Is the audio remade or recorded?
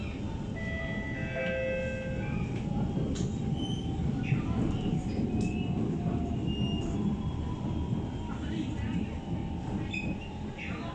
recorded